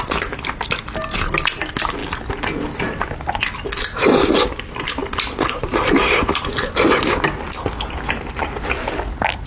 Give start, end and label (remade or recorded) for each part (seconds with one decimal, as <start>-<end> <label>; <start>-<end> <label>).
0.0-9.5 recorded